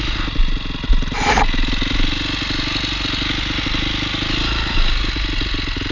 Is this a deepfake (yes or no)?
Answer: no